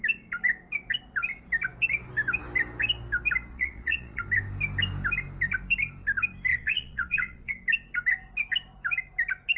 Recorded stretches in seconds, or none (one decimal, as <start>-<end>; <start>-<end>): 0.0-3.5; 4.2-6.5; 7.5-9.6